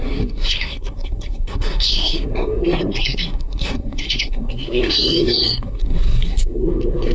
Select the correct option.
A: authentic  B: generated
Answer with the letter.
B